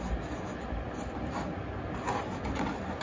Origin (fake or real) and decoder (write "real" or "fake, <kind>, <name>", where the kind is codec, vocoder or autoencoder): real